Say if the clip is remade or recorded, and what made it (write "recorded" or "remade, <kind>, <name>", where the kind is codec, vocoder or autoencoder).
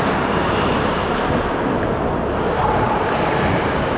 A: recorded